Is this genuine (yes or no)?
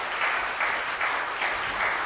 yes